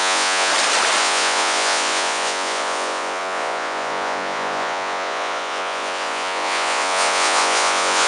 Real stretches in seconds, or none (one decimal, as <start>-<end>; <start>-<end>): 0.5-1.0